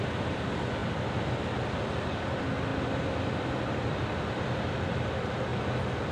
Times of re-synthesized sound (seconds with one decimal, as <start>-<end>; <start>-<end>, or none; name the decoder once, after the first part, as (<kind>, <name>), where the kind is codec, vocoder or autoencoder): 5.5-6.1 (vocoder, BigVGAN v2)